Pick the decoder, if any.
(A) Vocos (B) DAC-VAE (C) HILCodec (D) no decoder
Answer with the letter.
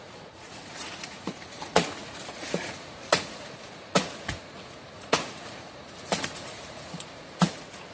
A